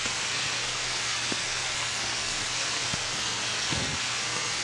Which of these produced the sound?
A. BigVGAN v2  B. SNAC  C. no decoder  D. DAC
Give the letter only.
B